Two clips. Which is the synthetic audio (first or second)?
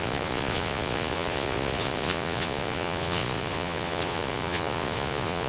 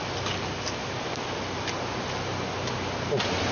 first